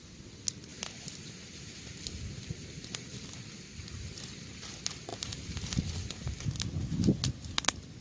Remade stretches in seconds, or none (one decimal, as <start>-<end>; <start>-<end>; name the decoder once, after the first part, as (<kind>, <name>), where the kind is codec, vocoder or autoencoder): none